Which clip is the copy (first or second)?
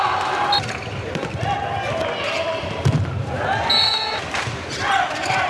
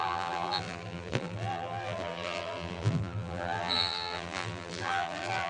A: second